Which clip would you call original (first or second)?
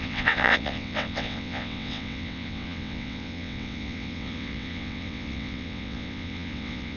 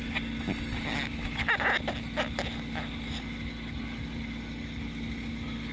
second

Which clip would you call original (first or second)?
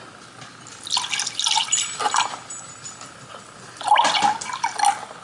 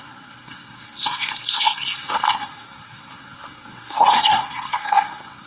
first